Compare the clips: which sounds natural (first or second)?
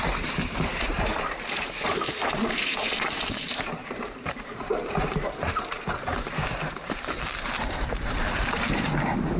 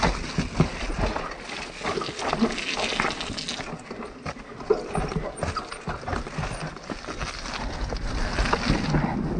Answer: second